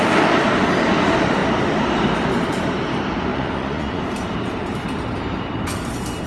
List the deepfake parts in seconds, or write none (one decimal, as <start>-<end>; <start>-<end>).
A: 3.3-4.0